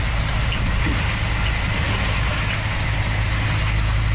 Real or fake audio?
real